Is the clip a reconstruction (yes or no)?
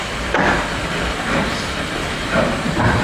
yes